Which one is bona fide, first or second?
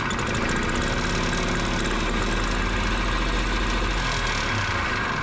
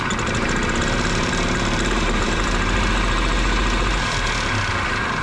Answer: first